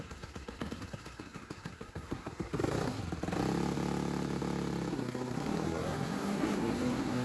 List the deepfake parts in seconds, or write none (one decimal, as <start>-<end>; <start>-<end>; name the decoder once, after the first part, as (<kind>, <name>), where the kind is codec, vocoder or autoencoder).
0.0-3.0 (codec, SNAC); 4.9-7.2